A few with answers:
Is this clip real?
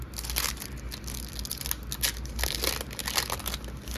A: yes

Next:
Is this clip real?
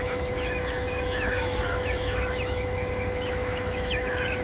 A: no